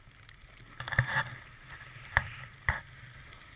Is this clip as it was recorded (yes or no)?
yes